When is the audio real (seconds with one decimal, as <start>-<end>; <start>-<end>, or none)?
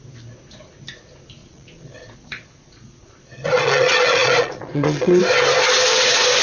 0.0-1.4; 5.2-6.4